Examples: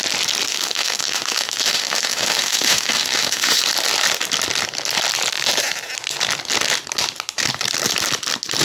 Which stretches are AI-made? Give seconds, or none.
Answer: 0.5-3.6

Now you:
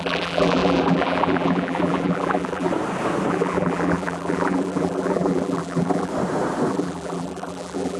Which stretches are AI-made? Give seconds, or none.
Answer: 0.0-2.7; 3.3-6.1; 6.7-8.0

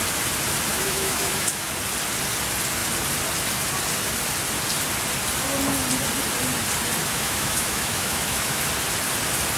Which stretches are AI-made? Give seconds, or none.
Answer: 0.7-1.7; 7.1-8.7